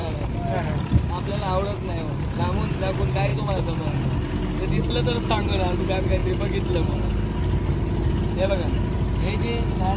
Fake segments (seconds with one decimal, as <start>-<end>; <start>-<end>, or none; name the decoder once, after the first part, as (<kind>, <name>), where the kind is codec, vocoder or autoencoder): none

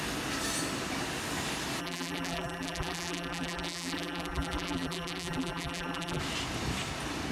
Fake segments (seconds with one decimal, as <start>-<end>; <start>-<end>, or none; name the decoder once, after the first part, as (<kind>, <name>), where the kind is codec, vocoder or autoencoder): 1.8-6.2 (vocoder, BigVGAN v2)

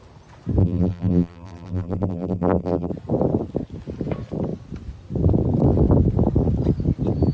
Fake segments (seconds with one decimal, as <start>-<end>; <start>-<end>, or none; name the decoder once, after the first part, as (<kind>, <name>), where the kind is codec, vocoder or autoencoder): 0.6-2.9 (vocoder, BigVGAN v2)

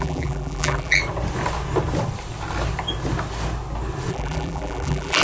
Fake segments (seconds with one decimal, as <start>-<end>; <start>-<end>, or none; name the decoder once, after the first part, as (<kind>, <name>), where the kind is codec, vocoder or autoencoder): 0.0-1.0 (vocoder, BigVGAN v2); 4.1-5.2

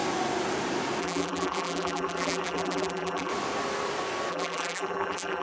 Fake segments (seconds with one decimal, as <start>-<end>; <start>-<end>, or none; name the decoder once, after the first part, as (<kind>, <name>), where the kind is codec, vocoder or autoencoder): 1.0-3.3 (vocoder, BigVGAN v2); 4.3-5.4

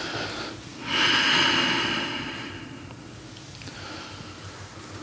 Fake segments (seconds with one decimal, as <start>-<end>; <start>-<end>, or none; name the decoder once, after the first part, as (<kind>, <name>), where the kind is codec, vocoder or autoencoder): none